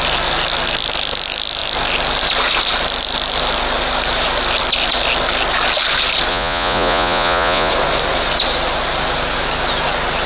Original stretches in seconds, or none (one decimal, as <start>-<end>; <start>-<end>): 0.0-6.3; 7.7-10.3